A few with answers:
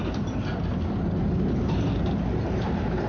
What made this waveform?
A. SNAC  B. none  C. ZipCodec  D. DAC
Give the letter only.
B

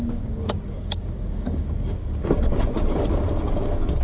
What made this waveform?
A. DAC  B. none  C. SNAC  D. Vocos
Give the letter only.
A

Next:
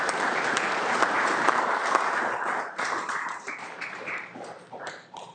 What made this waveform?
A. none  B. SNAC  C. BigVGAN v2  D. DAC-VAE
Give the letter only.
C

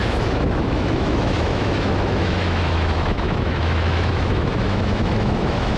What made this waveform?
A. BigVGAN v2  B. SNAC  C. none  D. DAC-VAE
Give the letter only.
D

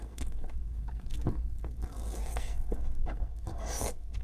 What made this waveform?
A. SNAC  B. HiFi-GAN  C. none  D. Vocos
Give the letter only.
A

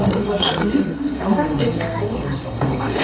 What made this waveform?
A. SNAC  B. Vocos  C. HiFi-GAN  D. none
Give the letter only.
A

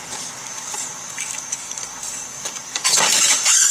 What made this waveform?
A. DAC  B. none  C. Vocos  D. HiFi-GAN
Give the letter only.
A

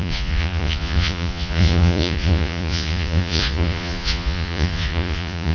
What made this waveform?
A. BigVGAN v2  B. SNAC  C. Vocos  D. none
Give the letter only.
C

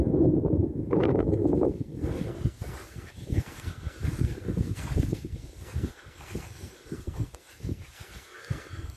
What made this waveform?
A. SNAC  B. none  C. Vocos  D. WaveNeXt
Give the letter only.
A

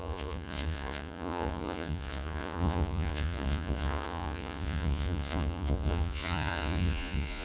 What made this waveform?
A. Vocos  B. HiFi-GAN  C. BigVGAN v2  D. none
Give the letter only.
A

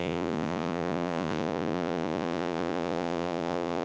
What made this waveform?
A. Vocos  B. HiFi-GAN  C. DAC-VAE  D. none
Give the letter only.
A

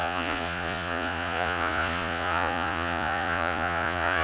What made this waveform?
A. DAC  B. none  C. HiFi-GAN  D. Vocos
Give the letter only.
D